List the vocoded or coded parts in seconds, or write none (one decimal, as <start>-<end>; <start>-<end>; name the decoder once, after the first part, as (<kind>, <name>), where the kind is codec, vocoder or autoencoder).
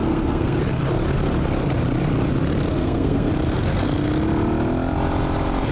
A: 0.0-0.6 (codec, SNAC); 2.7-3.3